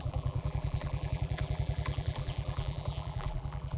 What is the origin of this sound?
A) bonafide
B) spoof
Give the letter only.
B